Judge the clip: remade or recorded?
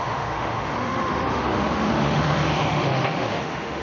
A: remade